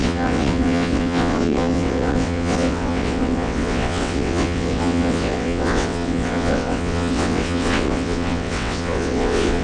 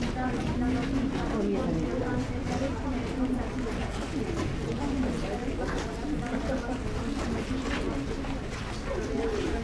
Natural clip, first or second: second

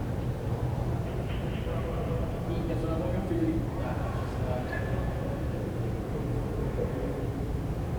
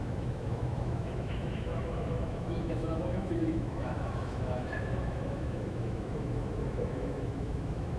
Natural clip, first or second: first